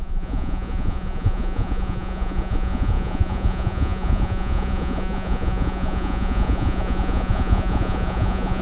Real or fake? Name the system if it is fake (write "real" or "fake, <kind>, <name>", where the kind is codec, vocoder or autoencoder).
fake, vocoder, Vocos